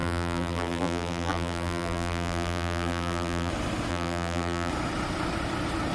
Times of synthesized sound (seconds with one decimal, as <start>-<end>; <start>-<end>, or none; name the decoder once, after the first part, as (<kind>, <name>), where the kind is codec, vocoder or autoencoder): 0.0-3.5 (vocoder, BigVGAN v2); 3.9-4.7